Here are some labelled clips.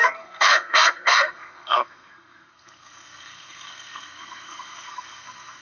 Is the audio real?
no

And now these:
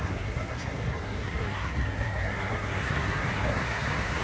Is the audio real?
no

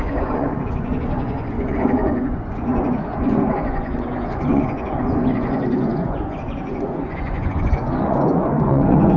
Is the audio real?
no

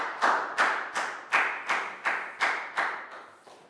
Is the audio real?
yes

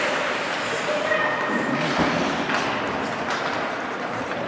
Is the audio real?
yes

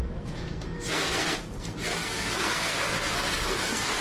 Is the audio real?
no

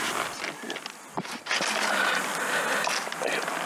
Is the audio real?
yes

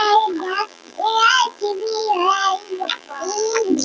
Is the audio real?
no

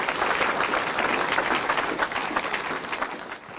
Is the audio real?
yes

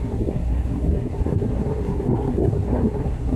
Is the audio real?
no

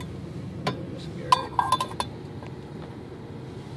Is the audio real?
yes